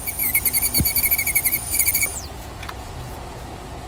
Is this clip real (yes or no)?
no